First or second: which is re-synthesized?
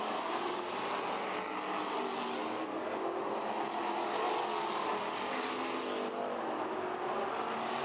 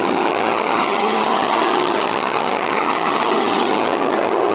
second